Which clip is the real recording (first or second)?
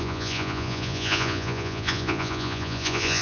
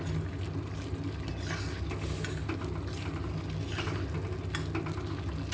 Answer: second